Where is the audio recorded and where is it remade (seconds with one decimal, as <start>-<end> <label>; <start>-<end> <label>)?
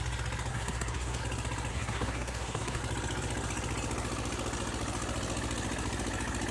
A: 0.0-0.5 recorded; 0.5-1.2 remade; 1.2-1.7 recorded; 1.7-2.8 remade; 2.8-6.5 recorded